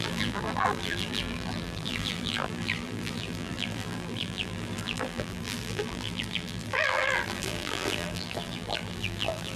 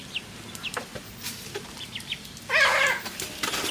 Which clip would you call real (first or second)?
second